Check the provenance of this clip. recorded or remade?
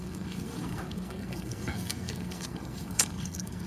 remade